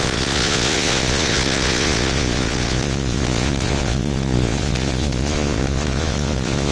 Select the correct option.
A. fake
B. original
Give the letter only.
A